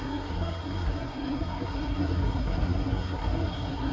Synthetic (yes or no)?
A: yes